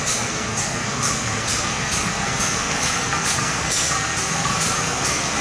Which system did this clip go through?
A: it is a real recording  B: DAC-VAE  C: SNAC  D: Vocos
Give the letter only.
C